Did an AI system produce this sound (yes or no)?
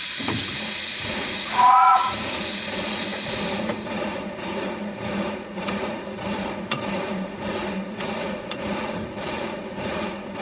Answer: yes